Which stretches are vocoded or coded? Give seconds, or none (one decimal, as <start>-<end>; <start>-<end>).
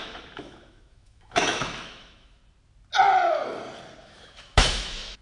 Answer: 0.0-2.4; 4.0-5.2